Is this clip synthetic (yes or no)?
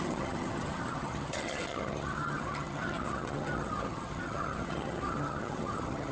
yes